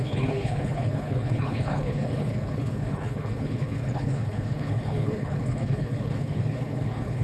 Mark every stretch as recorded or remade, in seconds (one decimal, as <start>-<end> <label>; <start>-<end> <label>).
0.0-7.2 remade